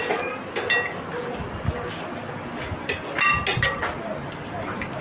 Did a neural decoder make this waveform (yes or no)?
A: no